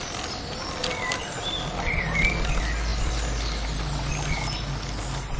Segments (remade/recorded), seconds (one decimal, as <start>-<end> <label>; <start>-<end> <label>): 0.0-5.4 remade